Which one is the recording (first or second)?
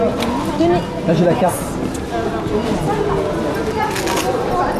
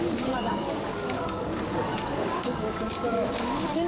first